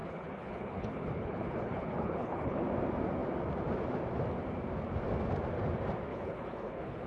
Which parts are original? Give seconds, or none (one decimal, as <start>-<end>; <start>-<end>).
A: 2.6-6.1